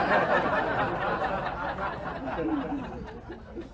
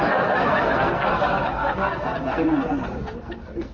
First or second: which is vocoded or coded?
second